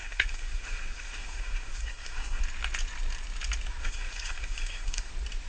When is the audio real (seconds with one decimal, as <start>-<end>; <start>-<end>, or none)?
2.4-3.8; 5.1-5.5

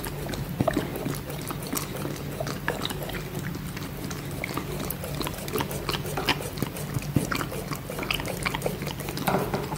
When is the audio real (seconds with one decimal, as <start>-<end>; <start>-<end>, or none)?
0.0-6.3; 6.9-9.8